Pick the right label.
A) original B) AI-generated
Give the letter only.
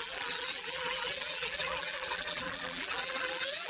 B